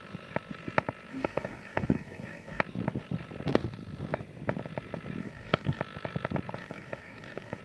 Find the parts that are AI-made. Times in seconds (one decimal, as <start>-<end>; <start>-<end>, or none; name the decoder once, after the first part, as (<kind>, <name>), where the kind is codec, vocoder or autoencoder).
1.1-2.6 (codec, DAC); 5.2-5.8; 6.6-7.6